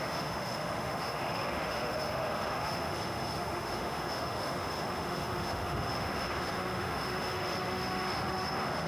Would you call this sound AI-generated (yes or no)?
yes